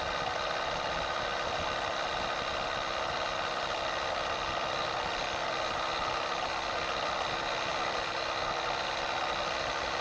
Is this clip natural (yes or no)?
yes